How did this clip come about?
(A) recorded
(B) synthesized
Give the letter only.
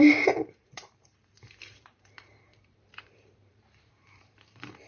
B